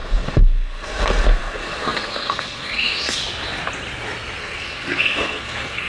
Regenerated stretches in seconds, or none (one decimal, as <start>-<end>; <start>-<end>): 0.0-3.2; 4.4-5.9